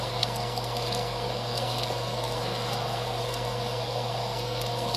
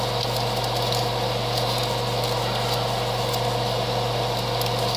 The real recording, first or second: second